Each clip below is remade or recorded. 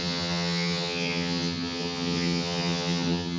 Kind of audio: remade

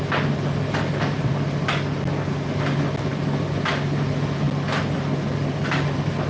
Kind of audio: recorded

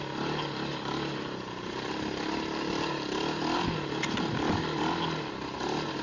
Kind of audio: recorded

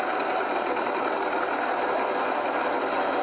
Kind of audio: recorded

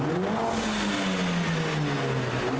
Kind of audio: recorded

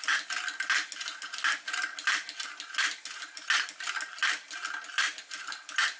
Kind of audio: recorded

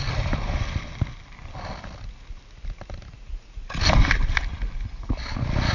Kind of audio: recorded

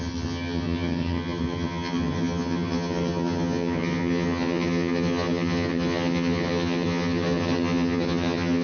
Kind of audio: remade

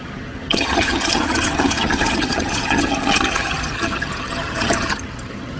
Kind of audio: remade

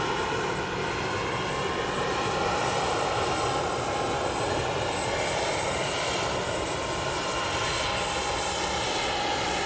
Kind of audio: recorded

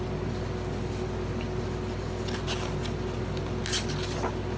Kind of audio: recorded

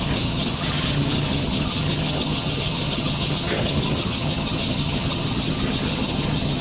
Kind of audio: remade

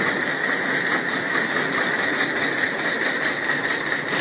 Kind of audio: recorded